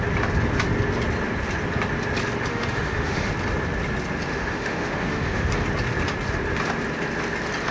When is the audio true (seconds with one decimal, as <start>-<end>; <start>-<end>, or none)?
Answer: 0.0-2.5; 3.3-4.3; 5.5-7.7